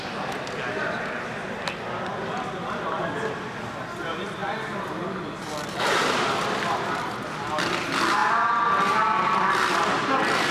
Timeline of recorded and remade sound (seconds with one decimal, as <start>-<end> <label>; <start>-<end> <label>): 0.0-10.5 recorded

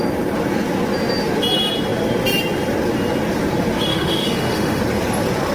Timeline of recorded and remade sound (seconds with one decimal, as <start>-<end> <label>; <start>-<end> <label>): 0.0-3.9 recorded; 3.9-4.8 remade; 4.8-5.5 recorded